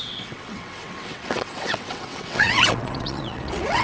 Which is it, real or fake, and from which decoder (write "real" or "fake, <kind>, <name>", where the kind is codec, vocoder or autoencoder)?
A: fake, vocoder, WaveNeXt